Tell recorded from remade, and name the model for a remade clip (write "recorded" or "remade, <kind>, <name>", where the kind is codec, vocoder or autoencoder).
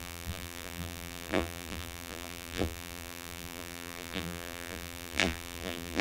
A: remade, vocoder, BigVGAN v2